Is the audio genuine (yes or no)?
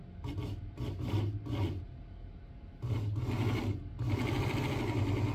yes